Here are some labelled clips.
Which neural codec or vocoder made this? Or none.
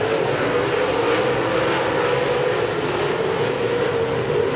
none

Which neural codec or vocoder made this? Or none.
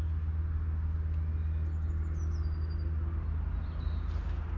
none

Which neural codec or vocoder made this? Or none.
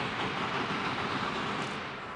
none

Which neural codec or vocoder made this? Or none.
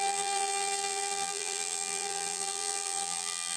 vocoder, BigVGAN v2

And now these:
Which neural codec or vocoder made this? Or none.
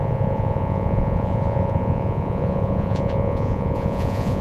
vocoder, Vocos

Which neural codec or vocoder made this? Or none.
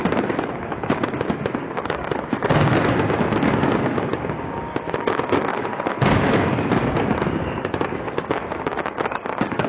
codec, DAC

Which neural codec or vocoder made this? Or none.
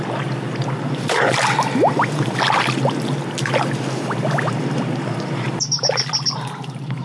none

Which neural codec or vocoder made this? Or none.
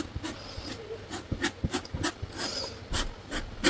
none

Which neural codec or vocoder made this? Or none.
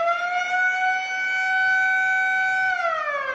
none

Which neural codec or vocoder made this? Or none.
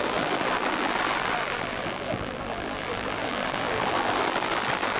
vocoder, BigVGAN v2